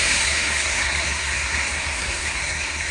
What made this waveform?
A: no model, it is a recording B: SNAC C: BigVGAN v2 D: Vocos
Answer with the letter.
B